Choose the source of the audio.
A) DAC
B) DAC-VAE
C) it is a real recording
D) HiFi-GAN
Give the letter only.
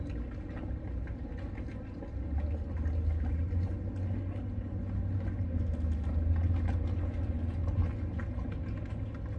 C